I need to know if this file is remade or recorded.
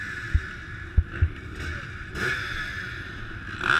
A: recorded